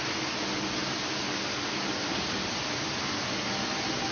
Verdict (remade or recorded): recorded